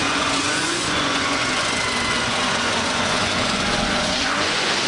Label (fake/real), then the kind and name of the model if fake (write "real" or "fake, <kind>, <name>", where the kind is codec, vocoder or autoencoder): fake, vocoder, Vocos